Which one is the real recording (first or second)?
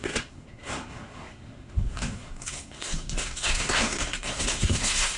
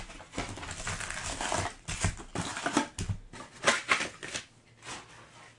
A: second